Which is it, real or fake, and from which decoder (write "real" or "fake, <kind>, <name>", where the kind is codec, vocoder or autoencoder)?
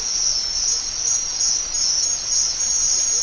real